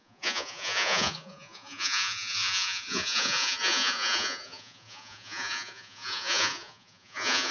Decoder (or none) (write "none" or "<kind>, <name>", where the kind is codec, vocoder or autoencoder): vocoder, Vocos